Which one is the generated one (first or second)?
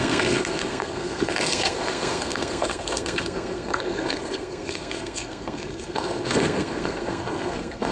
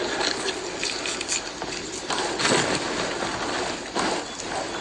first